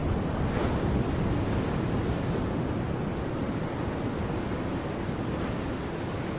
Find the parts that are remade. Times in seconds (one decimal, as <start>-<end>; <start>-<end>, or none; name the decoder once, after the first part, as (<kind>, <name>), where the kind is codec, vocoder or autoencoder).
none